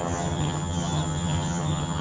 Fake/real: fake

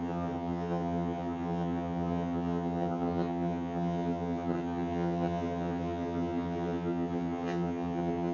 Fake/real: fake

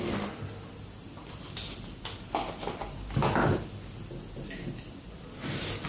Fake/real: real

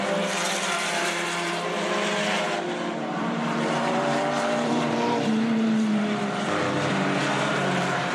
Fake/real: fake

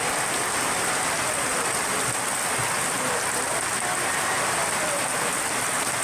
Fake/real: real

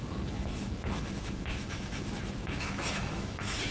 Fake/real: fake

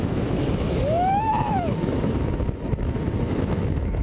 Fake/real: fake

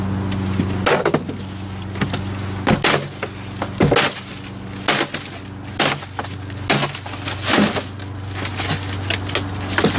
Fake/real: real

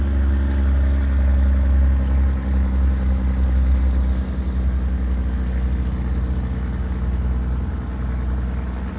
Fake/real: real